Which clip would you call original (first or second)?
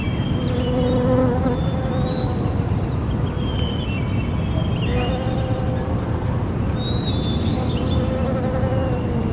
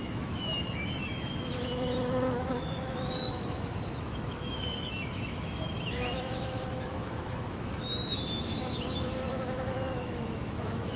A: first